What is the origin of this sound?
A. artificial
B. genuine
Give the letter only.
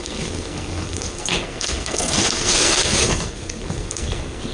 A